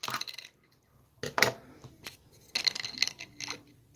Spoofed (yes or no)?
no